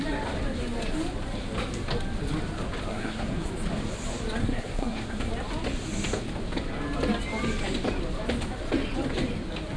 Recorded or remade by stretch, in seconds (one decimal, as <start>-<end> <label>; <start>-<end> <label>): 0.0-2.9 recorded; 2.9-3.5 remade; 3.5-4.4 recorded; 4.4-5.3 remade; 5.3-9.8 recorded

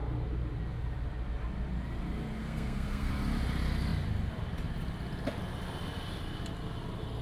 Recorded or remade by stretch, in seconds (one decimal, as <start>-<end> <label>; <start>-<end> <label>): 0.0-2.4 recorded; 2.4-3.1 remade; 3.1-7.2 recorded